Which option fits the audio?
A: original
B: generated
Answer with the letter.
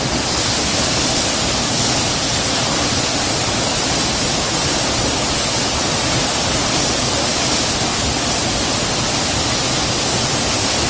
A